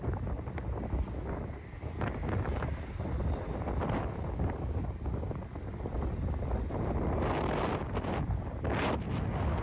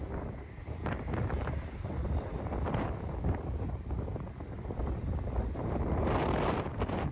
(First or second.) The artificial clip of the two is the second